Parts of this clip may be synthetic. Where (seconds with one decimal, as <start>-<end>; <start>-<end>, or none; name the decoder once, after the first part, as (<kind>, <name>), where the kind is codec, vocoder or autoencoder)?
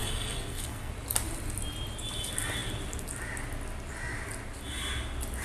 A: 0.0-0.9 (codec, SNAC)